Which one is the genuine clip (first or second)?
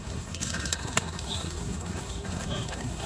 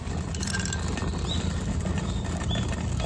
second